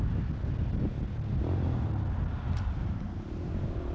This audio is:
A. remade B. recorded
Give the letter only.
B